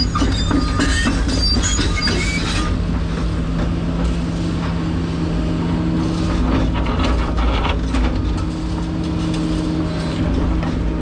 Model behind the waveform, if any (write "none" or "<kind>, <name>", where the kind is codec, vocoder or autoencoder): none